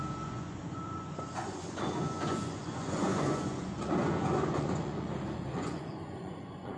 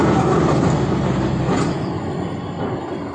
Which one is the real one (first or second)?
second